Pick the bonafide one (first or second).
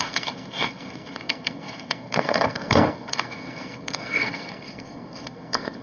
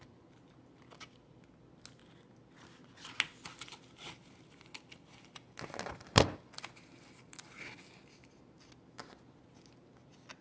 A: second